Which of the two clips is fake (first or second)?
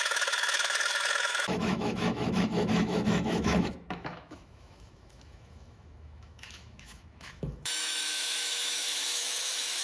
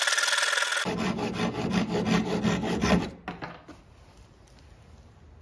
first